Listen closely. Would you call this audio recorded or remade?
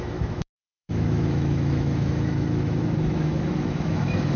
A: remade